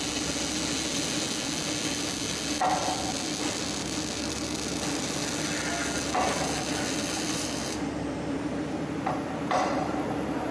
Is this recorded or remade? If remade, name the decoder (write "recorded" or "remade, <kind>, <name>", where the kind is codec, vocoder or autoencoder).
recorded